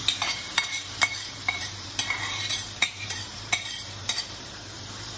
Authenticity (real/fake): fake